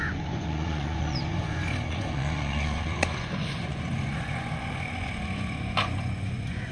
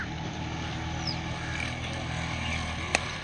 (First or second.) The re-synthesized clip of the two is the first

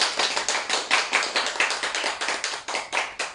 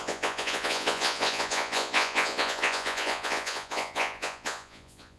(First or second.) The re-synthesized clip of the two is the second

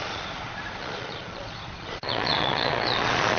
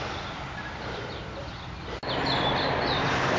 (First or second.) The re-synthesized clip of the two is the first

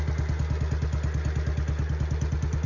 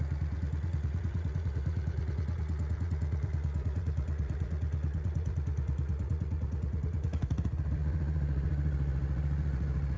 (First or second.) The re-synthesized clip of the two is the second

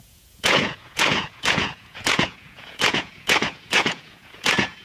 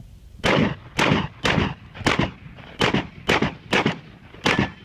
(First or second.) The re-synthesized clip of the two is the first